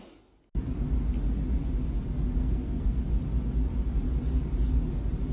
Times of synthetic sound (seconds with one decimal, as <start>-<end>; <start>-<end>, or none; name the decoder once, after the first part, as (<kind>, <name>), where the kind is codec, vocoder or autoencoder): 2.4-3.0 (codec, SNAC)